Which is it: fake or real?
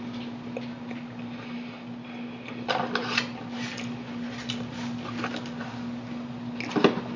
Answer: real